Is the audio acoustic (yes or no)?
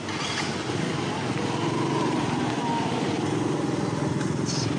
yes